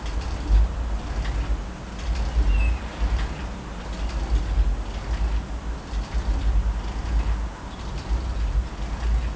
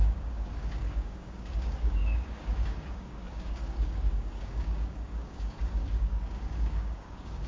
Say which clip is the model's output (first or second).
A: second